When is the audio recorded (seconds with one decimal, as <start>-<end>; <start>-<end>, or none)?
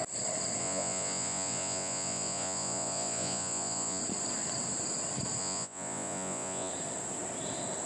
0.0-0.6; 4.0-5.4; 6.7-7.9